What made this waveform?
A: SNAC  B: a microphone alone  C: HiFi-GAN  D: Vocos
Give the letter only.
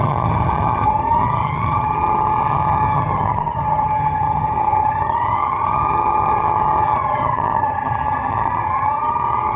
C